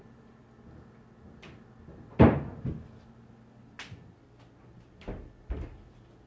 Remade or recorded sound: recorded